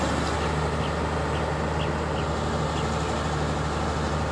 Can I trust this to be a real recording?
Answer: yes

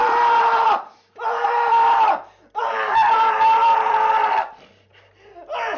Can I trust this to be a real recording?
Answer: no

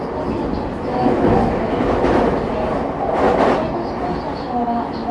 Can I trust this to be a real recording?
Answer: yes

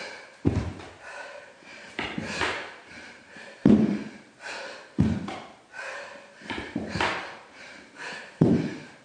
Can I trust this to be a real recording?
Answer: no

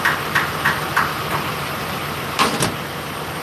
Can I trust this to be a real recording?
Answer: no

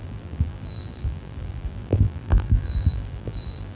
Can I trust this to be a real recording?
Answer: no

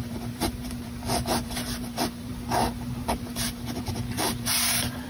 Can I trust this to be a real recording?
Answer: no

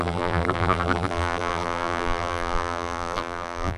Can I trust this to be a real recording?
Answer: no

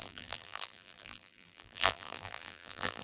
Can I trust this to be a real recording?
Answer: no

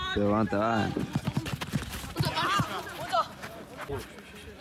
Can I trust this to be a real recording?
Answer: yes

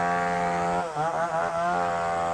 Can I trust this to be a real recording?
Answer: yes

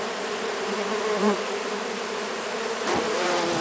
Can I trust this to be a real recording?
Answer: no